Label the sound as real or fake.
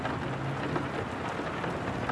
real